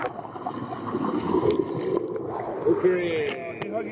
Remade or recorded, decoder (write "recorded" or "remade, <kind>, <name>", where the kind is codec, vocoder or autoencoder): recorded